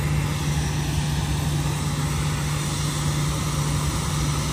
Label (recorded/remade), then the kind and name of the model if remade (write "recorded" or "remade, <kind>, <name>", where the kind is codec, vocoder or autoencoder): recorded